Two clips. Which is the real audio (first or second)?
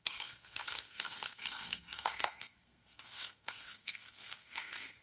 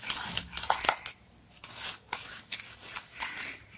second